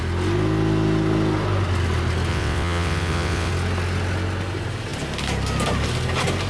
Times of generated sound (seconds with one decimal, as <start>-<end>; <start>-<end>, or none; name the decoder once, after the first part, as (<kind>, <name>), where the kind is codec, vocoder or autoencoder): 2.3-3.5 (vocoder, WaveNeXt)